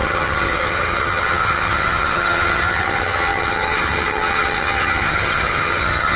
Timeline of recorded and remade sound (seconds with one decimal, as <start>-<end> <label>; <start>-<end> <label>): 0.0-6.2 remade